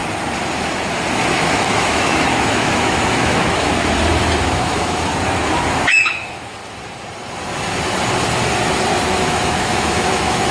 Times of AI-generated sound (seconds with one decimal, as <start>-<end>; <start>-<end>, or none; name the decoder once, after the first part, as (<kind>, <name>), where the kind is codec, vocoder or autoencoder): 1.4-3.7 (autoencoder, DAC-VAE); 4.4-5.1; 5.7-6.6; 9.1-10.5